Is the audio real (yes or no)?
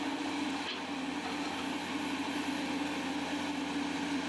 yes